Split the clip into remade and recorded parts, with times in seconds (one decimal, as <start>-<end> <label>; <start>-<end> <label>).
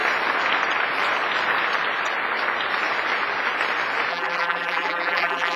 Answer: 0.0-4.1 recorded; 4.1-5.6 remade